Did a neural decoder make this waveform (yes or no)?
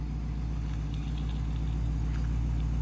no